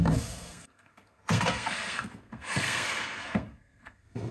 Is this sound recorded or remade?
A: remade